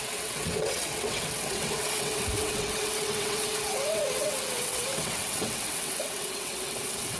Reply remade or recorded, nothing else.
remade